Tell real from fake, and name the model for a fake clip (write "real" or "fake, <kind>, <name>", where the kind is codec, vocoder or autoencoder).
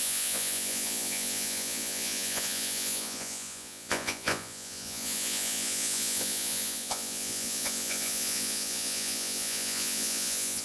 fake, vocoder, Vocos